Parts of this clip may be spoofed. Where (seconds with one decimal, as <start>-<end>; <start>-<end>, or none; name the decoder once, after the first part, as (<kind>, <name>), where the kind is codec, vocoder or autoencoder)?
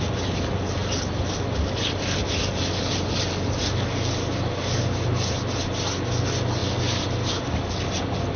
none